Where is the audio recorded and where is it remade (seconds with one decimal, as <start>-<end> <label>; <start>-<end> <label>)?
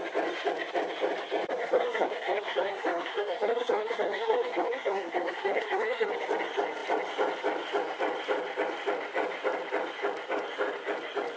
0.0-1.6 recorded; 1.6-6.1 remade; 6.1-11.4 recorded